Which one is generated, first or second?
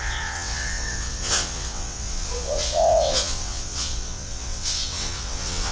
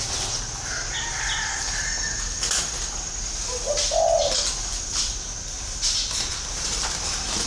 first